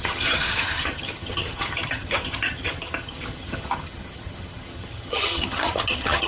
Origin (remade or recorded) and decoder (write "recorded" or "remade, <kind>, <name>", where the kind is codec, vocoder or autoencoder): remade, vocoder, HiFi-GAN